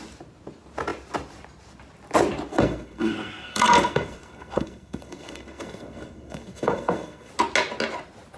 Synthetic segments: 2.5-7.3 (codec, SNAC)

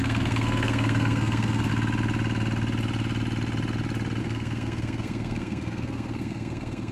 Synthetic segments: 0.0-1.7 (codec, SNAC); 4.2-6.9

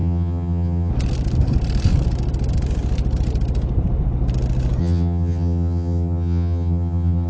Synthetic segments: 0.0-0.9 (vocoder, HiFi-GAN); 4.8-7.3

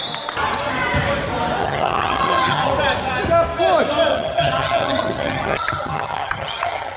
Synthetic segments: 1.6-2.7 (vocoder, HiFi-GAN); 4.1-7.0

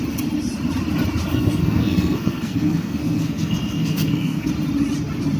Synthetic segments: 1.3-4.5 (codec, SNAC)